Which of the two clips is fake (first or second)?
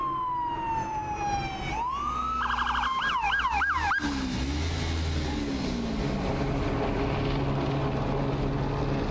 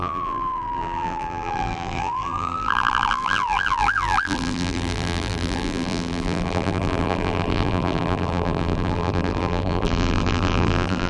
second